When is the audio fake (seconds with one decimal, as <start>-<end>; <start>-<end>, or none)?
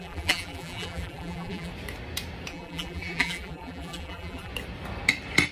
0.0-1.7; 2.5-4.5